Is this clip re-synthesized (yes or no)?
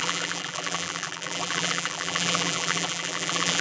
yes